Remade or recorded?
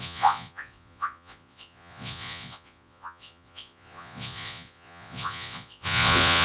remade